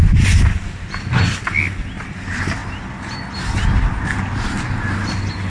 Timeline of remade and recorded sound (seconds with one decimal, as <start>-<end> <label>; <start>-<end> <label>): 0.0-5.5 recorded